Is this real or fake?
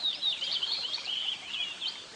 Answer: fake